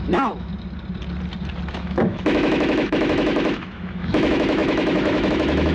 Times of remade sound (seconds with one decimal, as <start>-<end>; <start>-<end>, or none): 0.0-0.5; 1.7-5.7